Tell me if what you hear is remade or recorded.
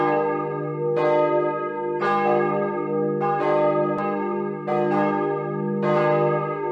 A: recorded